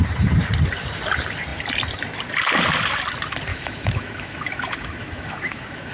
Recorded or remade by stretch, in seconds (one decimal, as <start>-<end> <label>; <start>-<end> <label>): 0.0-3.5 recorded; 3.5-5.9 remade